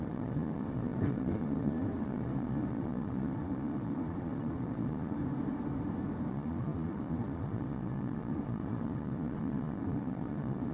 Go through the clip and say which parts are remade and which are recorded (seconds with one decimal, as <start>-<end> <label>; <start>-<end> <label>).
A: 0.0-5.2 remade; 5.2-6.3 recorded; 6.3-10.7 remade